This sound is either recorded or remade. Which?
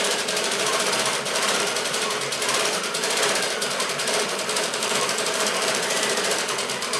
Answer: remade